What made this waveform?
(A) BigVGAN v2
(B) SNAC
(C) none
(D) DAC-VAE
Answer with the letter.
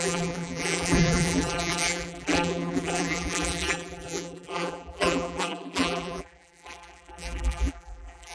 A